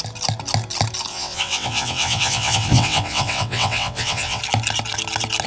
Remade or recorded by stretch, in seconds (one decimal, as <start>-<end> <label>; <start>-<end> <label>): 0.0-1.1 recorded; 1.1-4.4 remade; 4.4-5.5 recorded